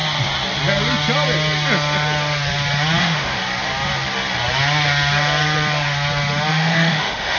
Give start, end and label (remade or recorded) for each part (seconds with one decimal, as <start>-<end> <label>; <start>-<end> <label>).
0.0-3.0 recorded; 3.0-3.4 remade; 3.4-6.5 recorded; 6.5-7.4 remade